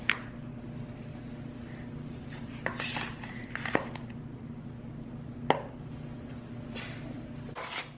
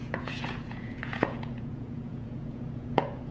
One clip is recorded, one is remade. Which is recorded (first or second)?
first